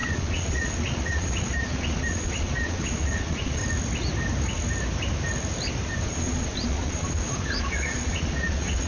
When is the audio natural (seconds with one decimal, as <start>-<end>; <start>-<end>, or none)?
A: 3.6-6.0